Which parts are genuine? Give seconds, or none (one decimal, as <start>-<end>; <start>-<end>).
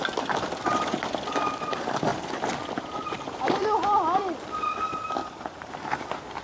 0.0-5.2; 5.7-6.4